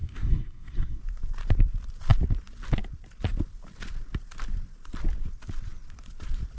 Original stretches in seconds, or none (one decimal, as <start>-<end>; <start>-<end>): 1.0-6.6